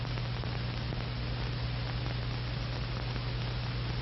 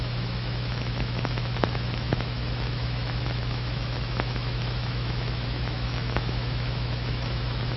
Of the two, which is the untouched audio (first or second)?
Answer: first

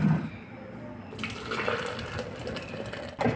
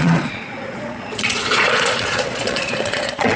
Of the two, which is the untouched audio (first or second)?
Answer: first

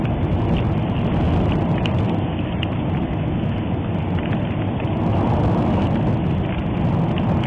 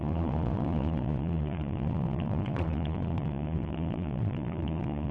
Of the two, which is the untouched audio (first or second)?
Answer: first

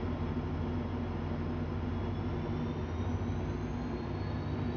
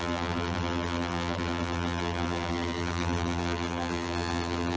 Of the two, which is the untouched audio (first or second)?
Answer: first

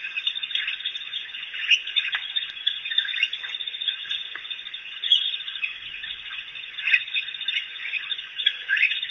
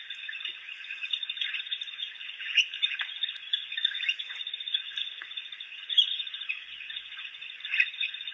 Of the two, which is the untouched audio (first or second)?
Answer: second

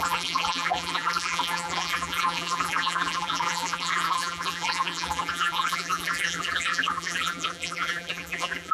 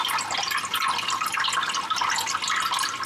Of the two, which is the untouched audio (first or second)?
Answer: second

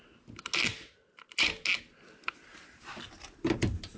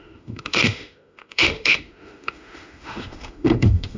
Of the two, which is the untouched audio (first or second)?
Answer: first